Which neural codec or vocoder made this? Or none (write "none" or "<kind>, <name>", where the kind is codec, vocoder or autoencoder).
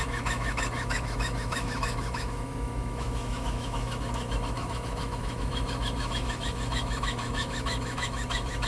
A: autoencoder, DAC-VAE